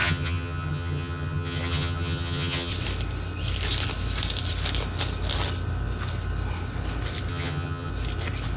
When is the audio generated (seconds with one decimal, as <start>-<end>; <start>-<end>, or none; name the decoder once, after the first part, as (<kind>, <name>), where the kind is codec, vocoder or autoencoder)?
0.0-2.7 (vocoder, HiFi-GAN); 7.3-7.9